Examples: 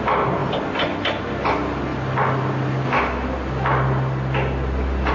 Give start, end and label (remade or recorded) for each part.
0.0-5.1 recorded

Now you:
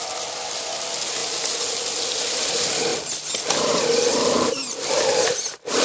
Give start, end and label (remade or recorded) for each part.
0.0-5.8 recorded

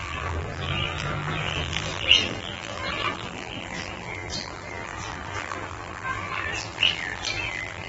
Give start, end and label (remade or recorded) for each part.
0.0-7.9 remade